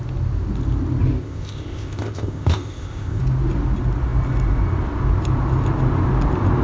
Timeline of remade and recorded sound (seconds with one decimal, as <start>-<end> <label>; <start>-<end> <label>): 0.0-1.2 recorded; 1.2-3.2 remade; 3.2-6.6 recorded